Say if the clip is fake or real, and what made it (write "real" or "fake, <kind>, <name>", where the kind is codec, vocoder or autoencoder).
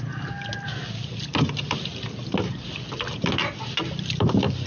real